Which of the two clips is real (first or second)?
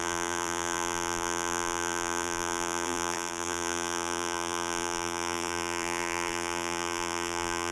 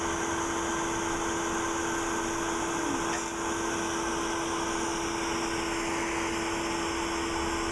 second